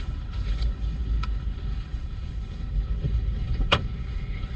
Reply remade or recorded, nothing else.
remade